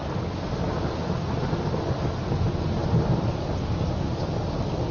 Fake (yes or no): no